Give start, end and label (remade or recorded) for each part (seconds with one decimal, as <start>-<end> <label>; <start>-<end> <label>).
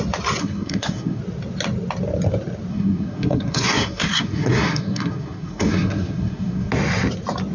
0.0-0.4 recorded; 0.4-1.2 remade; 1.2-2.7 recorded; 2.7-6.7 remade; 6.7-7.5 recorded